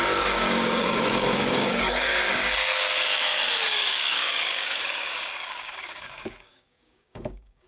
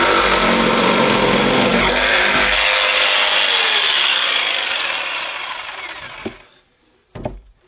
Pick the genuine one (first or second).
second